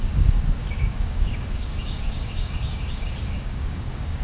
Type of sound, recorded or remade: remade